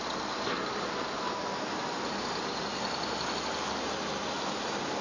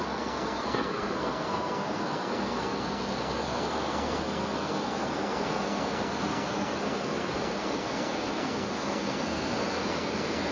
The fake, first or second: second